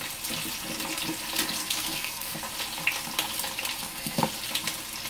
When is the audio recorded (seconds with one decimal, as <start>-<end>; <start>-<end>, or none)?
0.0-1.6; 2.4-3.8; 4.3-5.1